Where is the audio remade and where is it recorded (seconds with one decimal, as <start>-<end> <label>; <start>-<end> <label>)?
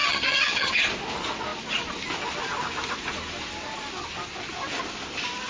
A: 0.0-0.7 remade; 0.7-5.5 recorded